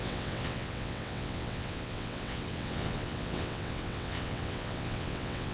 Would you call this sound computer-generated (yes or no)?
yes